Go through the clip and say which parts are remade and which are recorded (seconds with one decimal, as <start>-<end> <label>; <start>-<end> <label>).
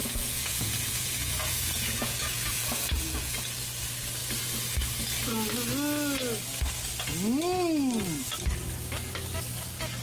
0.0-3.3 remade; 3.3-10.0 recorded